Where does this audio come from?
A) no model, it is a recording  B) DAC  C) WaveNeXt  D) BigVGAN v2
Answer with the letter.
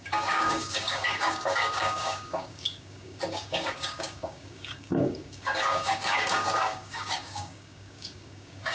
B